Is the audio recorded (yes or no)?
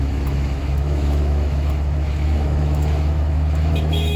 no